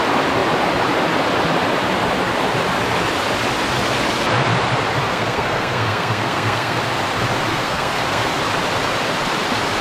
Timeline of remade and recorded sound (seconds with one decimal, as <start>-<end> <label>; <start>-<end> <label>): 0.0-5.1 recorded; 5.1-6.8 remade; 6.8-7.5 recorded; 7.5-8.4 remade; 8.4-9.8 recorded

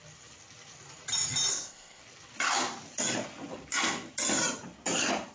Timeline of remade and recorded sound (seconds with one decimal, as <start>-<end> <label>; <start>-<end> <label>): 0.0-1.5 recorded; 1.5-2.0 remade; 2.0-5.3 recorded

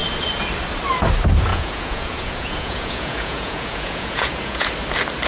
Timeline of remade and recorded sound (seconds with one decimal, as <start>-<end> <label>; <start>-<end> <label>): 0.0-1.5 recorded; 1.5-4.7 remade; 4.7-5.3 recorded

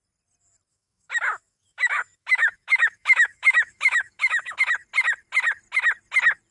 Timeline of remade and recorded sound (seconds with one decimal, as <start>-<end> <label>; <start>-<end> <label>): 0.0-0.7 recorded; 0.7-4.6 remade; 4.6-6.5 recorded

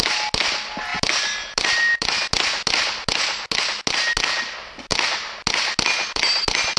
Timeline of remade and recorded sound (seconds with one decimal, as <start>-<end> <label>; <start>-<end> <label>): 0.0-6.8 recorded

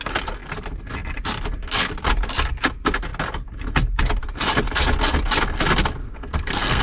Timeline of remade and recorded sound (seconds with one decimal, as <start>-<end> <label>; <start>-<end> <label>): 0.0-6.0 recorded; 6.0-6.8 remade

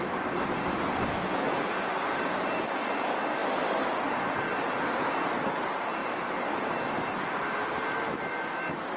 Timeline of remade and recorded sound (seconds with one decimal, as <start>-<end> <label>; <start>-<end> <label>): 0.0-6.0 remade; 6.0-8.6 recorded; 8.6-9.0 remade

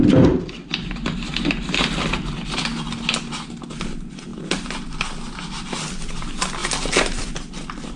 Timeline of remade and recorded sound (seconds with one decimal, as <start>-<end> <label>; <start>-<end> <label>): 0.0-4.3 recorded; 4.3-4.9 remade; 4.9-6.6 recorded; 6.6-7.3 remade; 7.3-8.0 recorded